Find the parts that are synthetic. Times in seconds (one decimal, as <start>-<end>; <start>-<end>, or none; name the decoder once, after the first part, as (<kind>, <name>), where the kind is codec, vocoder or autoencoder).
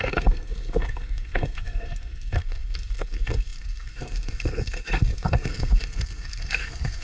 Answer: 0.0-7.0 (codec, SNAC)